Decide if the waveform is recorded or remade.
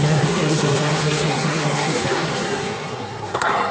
remade